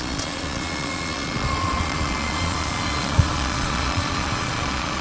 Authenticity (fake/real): fake